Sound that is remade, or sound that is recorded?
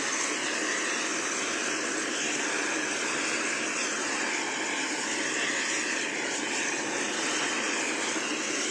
recorded